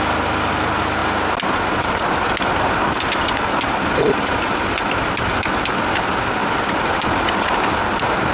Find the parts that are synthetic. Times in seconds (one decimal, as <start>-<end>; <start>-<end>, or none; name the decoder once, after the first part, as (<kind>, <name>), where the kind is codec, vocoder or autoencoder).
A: none

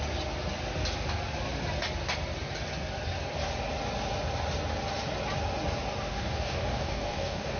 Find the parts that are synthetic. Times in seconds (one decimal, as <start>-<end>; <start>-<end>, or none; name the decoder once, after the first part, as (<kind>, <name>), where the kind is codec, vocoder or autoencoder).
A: 6.1-7.6 (codec, DAC)

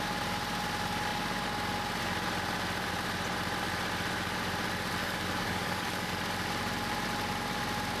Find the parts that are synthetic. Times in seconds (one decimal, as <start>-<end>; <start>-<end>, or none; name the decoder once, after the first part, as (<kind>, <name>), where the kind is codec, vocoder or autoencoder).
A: 5.0-6.1 (codec, DAC)

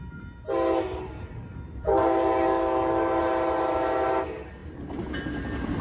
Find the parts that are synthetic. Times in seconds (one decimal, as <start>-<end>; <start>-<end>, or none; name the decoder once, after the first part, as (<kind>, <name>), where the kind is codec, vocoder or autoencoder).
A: 1.9-3.2 (codec, DAC)

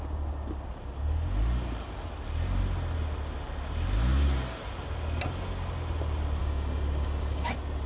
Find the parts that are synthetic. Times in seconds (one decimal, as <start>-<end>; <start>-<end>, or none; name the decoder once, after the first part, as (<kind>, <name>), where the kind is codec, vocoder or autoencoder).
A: 6.4-7.5 (codec, DAC)

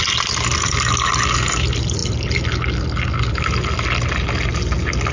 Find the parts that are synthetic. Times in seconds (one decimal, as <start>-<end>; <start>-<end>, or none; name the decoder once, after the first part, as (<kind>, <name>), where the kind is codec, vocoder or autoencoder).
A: none

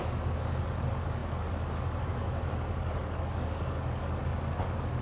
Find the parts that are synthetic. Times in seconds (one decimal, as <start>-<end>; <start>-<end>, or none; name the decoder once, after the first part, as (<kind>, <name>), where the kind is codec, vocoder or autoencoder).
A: 0.0-5.0 (codec, DAC)